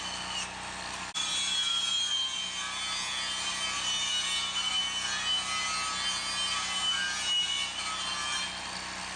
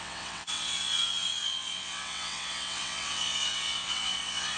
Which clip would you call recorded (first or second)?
first